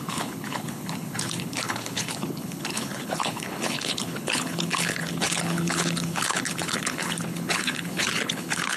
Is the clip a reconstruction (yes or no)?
yes